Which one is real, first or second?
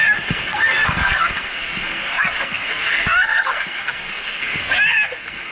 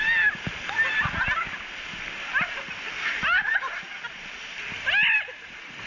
second